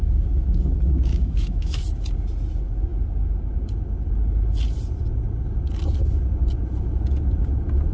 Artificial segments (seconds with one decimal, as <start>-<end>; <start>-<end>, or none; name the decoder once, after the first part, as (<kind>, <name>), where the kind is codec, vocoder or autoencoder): 1.1-1.8 (autoencoder, DAC-VAE)